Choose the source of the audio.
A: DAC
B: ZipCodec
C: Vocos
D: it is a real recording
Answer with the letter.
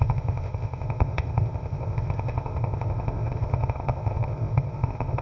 B